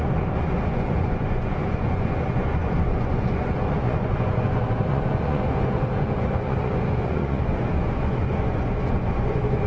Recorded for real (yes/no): no